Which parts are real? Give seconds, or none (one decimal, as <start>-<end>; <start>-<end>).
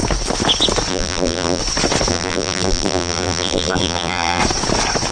0.0-0.9; 1.6-2.1; 4.4-5.1